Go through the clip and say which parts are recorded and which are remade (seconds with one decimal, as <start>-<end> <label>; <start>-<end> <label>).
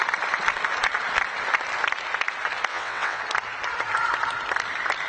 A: 0.0-2.7 recorded; 2.7-3.2 remade; 3.2-5.1 recorded